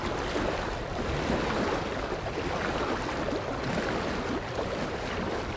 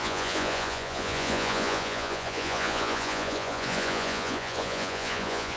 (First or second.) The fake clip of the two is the second